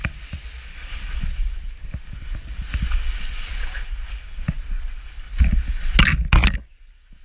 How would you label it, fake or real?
real